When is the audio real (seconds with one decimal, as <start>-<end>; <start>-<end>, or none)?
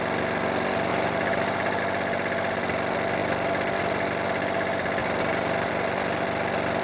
0.0-0.9; 1.8-5.0; 5.7-6.8